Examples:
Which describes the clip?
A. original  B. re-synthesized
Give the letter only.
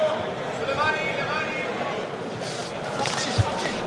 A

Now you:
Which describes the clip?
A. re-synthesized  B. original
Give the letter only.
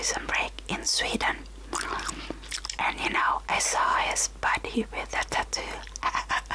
B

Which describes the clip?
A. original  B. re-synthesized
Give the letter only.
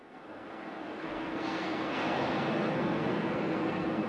B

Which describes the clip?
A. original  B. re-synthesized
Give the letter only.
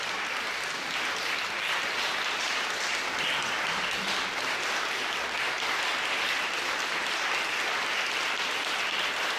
A